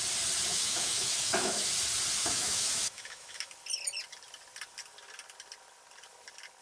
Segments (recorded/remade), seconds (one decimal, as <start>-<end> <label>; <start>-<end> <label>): 0.0-0.5 recorded; 0.5-1.7 remade; 1.7-2.2 recorded; 2.2-3.5 remade; 3.5-6.6 recorded